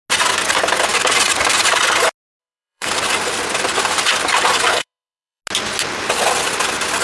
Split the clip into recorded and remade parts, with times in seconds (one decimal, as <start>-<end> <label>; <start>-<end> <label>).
0.0-2.4 recorded; 2.4-2.9 remade; 2.9-4.7 recorded; 4.7-5.4 remade; 5.4-7.0 recorded